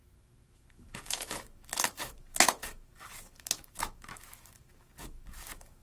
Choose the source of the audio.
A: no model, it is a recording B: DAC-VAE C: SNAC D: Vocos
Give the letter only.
B